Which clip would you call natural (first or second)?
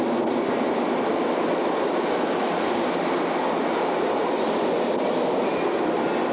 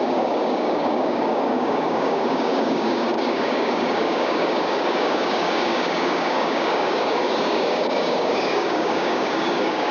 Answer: first